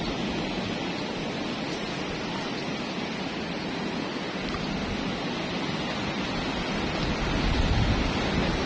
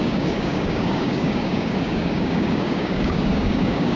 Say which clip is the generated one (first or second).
second